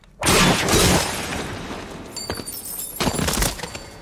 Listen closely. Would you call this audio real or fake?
real